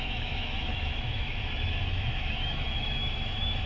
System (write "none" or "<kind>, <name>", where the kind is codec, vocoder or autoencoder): autoencoder, DAC-VAE